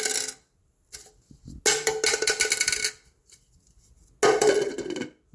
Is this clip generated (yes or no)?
no